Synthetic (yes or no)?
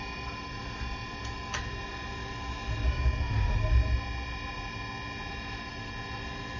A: no